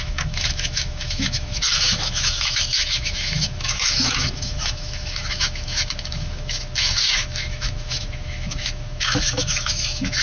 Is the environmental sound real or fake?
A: fake